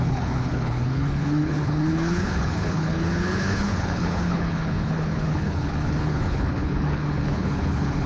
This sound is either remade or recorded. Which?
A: remade